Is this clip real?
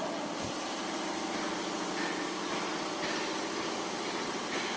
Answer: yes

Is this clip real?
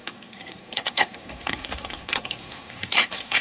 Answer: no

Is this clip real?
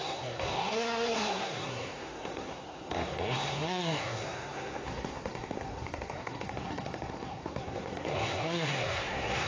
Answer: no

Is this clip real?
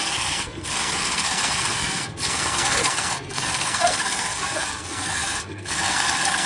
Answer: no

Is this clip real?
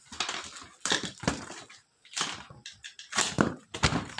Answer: yes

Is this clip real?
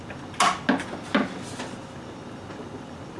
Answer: yes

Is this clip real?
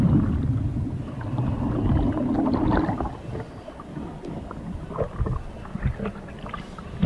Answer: yes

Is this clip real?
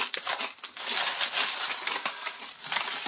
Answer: yes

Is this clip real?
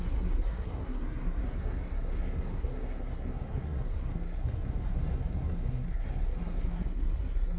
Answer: no